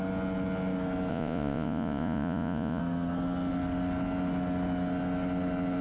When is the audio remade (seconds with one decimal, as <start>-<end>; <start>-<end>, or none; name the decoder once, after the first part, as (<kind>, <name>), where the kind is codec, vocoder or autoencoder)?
1.1-2.8 (vocoder, Vocos)